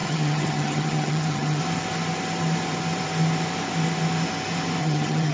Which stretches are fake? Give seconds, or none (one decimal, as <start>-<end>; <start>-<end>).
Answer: 0.0-1.6; 4.8-5.3